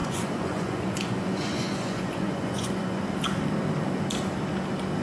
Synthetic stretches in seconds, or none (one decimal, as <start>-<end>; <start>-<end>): 0.0-3.0